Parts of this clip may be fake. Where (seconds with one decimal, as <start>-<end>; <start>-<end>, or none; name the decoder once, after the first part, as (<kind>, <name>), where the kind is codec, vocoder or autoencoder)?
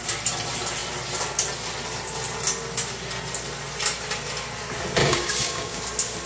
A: 5.0-5.8 (codec, DAC)